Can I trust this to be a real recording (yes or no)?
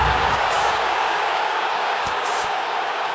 no